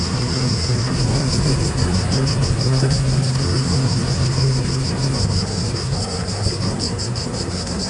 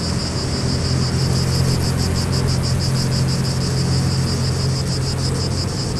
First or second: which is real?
second